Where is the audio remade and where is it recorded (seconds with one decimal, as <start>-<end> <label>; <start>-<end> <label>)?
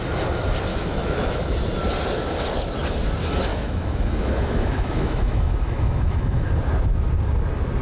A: 0.0-0.7 recorded; 0.7-1.5 remade; 1.5-3.5 recorded; 3.5-6.5 remade; 6.5-7.8 recorded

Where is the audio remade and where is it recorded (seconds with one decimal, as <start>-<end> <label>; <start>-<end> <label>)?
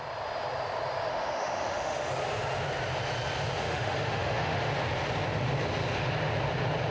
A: 0.0-1.1 recorded; 1.1-2.1 remade; 2.1-3.6 recorded; 3.6-4.7 remade; 4.7-6.9 recorded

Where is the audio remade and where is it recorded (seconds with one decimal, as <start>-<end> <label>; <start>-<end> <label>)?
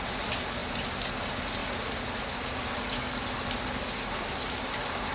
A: 0.0-5.1 recorded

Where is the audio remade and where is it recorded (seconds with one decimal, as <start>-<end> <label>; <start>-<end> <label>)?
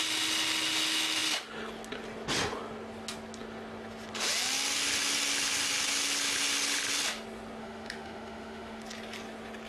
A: 0.0-7.6 recorded; 7.6-8.8 remade; 8.8-9.7 recorded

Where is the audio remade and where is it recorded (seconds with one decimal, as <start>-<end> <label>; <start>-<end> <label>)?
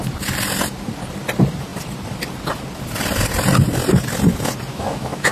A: 0.0-4.7 recorded; 4.7-5.3 remade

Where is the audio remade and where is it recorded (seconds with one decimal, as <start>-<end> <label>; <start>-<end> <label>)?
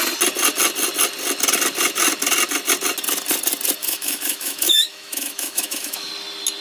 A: 0.0-3.8 recorded; 3.8-6.1 remade; 6.1-6.6 recorded